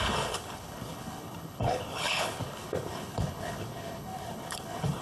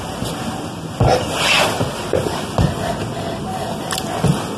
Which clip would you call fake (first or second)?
first